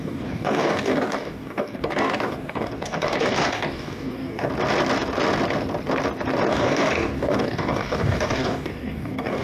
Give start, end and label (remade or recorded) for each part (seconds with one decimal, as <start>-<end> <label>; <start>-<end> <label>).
0.0-4.5 remade; 4.5-6.5 recorded; 6.5-9.4 remade